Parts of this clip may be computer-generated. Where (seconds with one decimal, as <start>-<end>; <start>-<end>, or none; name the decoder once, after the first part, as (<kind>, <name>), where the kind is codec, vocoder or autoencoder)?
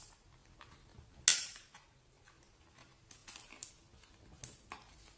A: 1.3-2.3 (vocoder, BigVGAN v2)